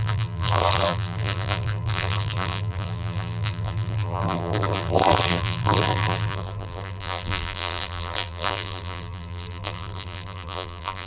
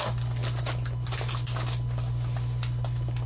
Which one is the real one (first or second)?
second